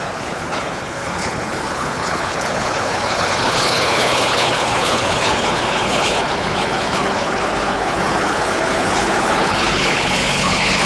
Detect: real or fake fake